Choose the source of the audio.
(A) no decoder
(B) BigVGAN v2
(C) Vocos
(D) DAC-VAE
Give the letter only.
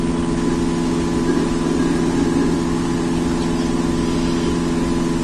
A